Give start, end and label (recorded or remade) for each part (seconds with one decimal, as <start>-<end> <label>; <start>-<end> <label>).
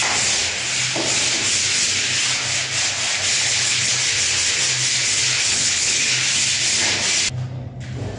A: 0.0-3.3 recorded; 3.3-3.9 remade; 3.9-5.5 recorded; 5.5-6.1 remade; 6.1-8.2 recorded